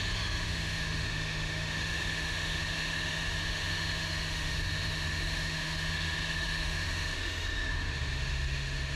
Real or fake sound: fake